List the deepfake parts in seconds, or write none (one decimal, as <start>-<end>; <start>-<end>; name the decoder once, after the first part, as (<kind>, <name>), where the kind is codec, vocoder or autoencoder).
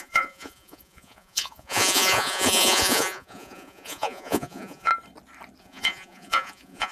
0.0-4.9 (vocoder, Vocos); 5.6-6.9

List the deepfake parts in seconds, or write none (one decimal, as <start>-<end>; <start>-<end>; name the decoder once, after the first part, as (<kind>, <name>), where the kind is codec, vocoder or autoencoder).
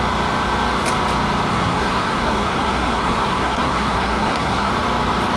1.5-4.7 (codec, SNAC)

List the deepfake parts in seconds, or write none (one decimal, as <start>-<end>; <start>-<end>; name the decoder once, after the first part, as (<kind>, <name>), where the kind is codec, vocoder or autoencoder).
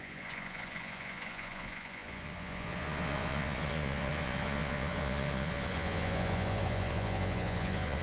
0.0-8.0 (vocoder, Vocos)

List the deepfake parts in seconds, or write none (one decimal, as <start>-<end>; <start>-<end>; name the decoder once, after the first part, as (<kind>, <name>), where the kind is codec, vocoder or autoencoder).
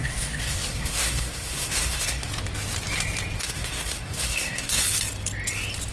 0.0-2.3 (codec, SNAC); 3.4-4.8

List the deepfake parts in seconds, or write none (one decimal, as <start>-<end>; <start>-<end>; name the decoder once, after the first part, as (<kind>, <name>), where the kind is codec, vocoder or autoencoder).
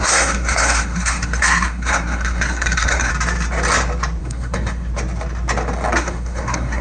0.0-3.1 (codec, SNAC); 4.2-4.9; 6.0-6.8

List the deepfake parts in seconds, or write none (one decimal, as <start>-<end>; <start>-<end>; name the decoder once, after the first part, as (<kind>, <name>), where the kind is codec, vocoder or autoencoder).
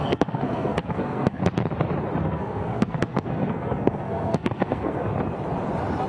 0.0-1.4 (codec, SNAC); 2.2-5.1